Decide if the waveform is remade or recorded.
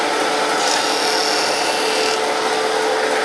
recorded